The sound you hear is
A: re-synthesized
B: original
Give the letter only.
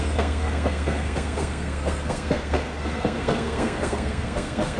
A